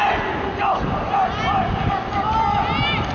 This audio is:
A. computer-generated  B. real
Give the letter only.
B